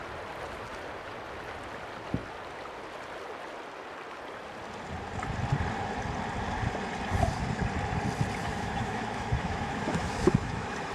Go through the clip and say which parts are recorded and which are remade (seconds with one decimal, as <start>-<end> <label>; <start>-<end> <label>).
0.0-8.4 recorded; 8.4-10.9 remade